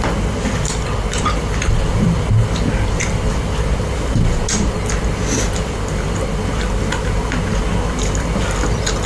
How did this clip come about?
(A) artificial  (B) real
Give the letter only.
B